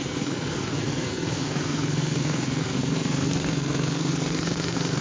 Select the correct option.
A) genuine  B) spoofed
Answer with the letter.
B